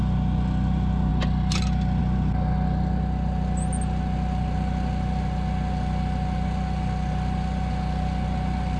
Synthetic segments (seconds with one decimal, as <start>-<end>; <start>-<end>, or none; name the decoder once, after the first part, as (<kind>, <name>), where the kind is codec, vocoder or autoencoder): none